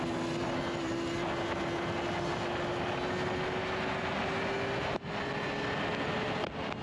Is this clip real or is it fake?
real